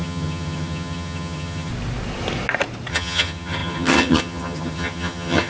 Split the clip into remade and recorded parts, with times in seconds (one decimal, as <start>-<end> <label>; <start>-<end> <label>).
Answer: 0.0-1.7 remade; 1.7-2.9 recorded; 2.9-5.5 remade